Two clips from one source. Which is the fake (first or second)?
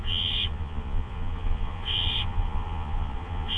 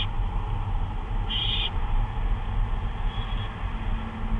first